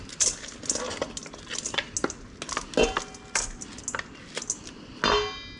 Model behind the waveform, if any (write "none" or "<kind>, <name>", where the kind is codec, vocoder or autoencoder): none